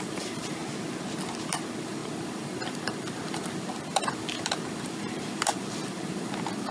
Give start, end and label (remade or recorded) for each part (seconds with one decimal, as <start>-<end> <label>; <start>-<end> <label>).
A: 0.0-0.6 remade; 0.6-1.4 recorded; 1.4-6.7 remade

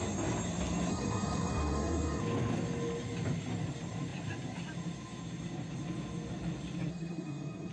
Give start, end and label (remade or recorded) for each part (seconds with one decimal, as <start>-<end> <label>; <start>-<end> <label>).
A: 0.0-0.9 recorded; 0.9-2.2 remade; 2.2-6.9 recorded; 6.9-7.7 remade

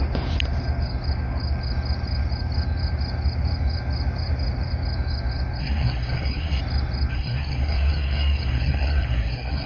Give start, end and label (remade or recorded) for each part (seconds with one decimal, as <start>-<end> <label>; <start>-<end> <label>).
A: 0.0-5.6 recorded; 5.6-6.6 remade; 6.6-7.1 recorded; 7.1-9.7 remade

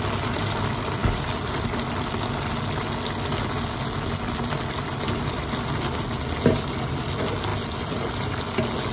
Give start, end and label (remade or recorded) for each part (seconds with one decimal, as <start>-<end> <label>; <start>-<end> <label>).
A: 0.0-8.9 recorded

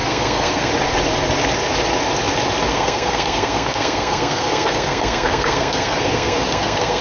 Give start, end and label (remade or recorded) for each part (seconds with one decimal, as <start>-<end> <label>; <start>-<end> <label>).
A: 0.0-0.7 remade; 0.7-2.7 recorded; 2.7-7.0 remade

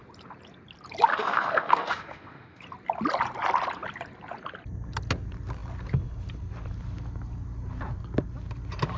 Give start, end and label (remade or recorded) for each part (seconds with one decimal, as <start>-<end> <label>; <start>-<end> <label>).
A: 0.0-1.1 recorded; 1.1-2.6 remade; 2.6-9.0 recorded

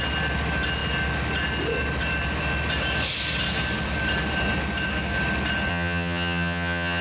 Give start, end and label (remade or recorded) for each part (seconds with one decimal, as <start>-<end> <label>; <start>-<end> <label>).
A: 0.0-5.7 recorded; 5.7-7.0 remade

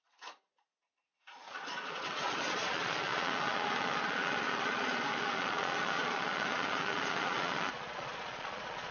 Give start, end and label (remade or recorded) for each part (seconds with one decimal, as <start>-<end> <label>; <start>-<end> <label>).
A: 0.0-8.9 remade